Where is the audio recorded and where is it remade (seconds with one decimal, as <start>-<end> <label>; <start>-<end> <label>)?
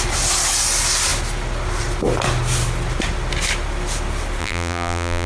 0.0-4.4 recorded; 4.4-5.3 remade